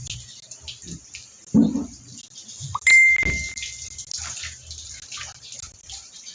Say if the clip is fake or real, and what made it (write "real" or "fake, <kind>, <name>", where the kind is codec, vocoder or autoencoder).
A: real